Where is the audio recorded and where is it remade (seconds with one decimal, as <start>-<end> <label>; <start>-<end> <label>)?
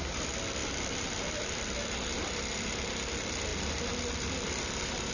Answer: 0.0-5.1 recorded